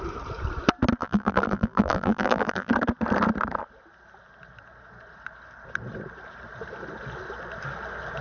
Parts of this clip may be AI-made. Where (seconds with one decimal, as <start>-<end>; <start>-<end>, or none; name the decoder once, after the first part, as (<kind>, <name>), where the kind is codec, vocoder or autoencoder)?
1.0-2.7 (vocoder, BigVGAN v2)